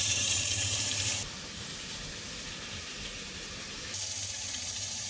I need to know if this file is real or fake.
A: fake